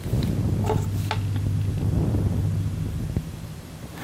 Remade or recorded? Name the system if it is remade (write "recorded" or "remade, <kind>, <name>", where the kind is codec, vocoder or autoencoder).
recorded